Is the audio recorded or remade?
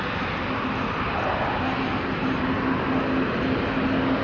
recorded